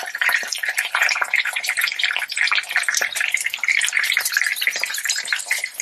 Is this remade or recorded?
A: remade